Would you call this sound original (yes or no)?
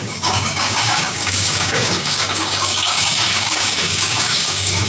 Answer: no